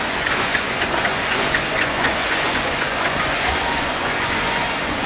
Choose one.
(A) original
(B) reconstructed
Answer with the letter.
B